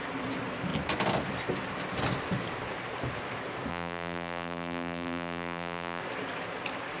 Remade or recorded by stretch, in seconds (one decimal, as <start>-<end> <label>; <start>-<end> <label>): 0.0-3.7 recorded; 3.7-6.0 remade; 6.0-7.0 recorded

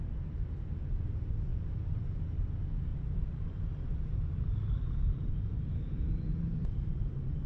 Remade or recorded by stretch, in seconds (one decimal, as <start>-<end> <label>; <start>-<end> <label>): 0.0-1.5 recorded; 1.5-2.3 remade; 2.3-2.9 recorded; 2.9-7.5 remade